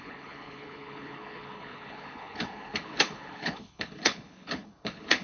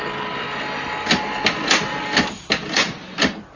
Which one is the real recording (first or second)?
second